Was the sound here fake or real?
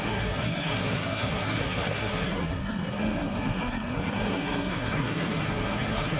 fake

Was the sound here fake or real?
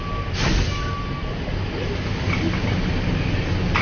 real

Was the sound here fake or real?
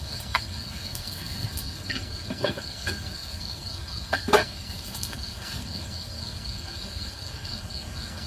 fake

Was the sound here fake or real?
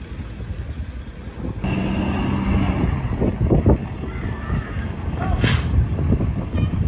real